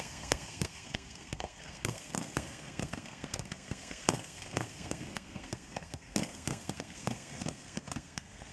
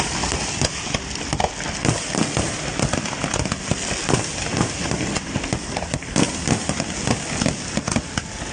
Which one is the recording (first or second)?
second